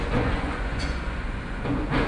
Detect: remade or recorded remade